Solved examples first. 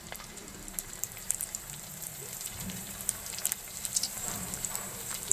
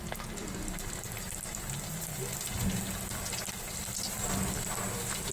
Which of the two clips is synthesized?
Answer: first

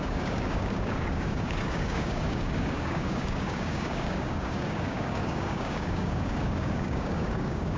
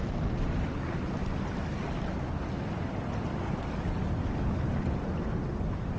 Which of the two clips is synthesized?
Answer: first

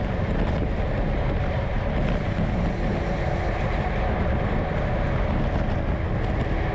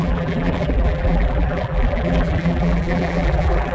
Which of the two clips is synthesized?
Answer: second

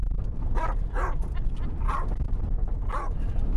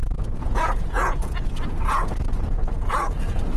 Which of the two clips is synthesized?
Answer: second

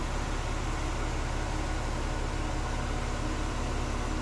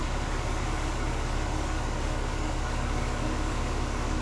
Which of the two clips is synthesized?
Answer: second